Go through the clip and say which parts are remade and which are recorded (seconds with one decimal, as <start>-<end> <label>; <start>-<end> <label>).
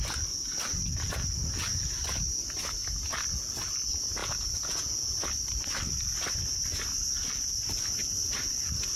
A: 0.0-4.2 recorded; 4.2-5.3 remade; 5.3-9.0 recorded